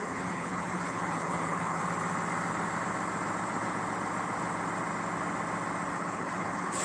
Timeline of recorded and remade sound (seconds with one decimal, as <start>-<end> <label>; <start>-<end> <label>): 0.0-1.8 remade; 1.8-5.9 recorded; 5.9-6.8 remade